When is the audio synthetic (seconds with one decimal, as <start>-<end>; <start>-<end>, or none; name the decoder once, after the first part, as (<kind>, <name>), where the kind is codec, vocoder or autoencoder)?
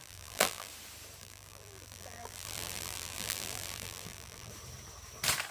0.0-0.7 (vocoder, BigVGAN v2); 1.2-4.5